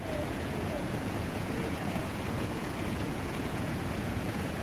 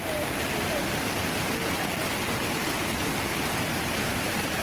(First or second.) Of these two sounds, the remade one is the first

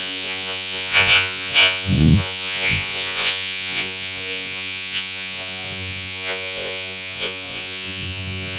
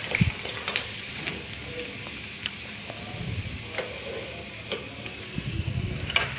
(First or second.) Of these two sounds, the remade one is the first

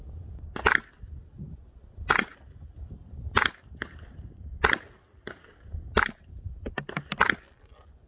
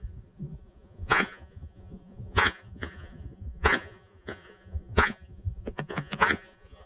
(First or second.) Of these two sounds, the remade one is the second